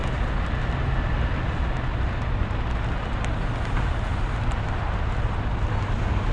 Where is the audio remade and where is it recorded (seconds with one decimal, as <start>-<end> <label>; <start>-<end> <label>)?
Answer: 0.0-6.3 recorded